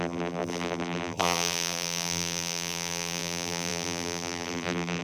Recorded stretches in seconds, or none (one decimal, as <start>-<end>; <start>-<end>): none